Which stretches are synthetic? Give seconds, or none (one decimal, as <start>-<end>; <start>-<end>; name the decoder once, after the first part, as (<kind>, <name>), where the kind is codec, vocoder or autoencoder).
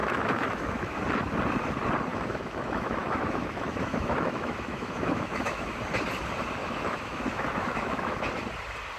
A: 0.0-1.0 (autoencoder, DAC-VAE); 2.1-5.8; 6.6-8.2